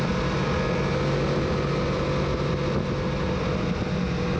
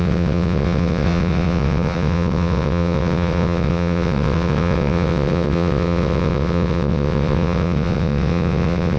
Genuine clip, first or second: first